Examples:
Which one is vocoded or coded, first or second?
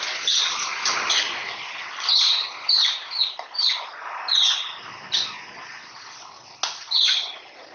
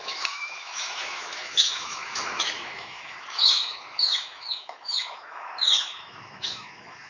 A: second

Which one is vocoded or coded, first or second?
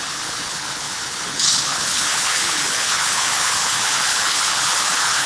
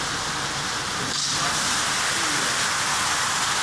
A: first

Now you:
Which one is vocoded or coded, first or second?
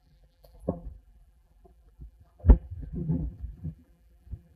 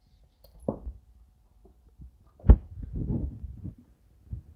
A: first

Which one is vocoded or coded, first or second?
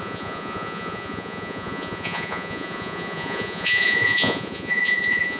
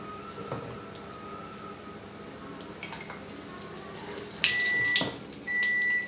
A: first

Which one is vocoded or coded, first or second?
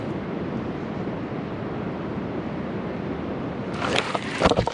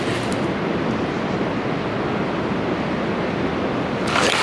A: first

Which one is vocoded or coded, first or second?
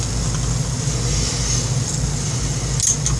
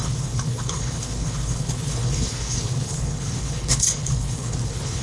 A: second